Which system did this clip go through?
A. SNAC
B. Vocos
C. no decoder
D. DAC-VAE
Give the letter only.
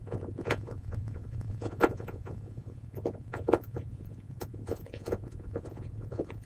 B